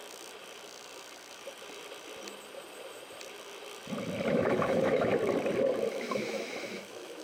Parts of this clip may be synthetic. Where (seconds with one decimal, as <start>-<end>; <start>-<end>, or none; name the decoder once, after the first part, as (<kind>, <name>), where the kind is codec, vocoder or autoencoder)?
4.3-5.1 (autoencoder, DAC-VAE); 5.9-7.2